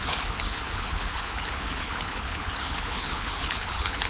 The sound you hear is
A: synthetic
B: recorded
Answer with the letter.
A